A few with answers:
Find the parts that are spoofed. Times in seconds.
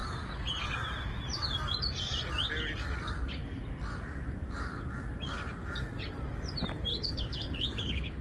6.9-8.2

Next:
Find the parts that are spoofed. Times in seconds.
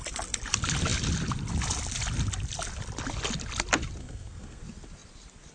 4.0-4.6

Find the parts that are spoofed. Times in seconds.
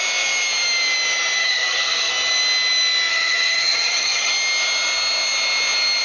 1.4-2.1; 3.1-4.3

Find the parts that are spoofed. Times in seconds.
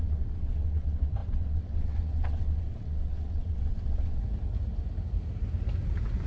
0.0-4.2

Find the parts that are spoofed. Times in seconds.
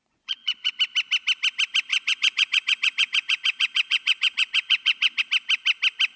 0.0-0.7; 1.9-5.2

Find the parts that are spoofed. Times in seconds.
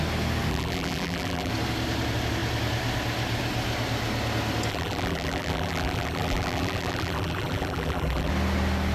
0.5-1.5; 4.7-8.3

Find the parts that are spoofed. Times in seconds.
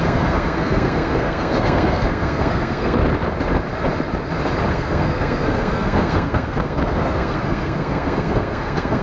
0.0-3.0; 4.7-9.0